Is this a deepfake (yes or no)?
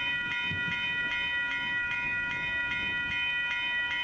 no